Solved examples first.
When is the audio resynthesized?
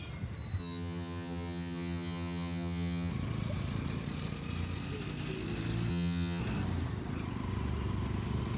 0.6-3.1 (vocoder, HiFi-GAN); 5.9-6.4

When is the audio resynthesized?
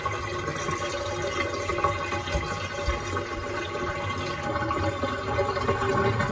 none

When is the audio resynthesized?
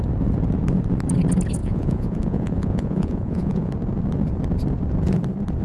1.6-3.7 (vocoder, Vocos)